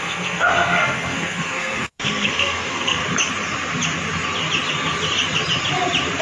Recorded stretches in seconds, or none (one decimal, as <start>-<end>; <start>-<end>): 3.0-6.2